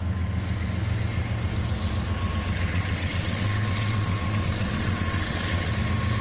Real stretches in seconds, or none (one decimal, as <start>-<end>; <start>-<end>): 0.0-2.7; 5.7-6.2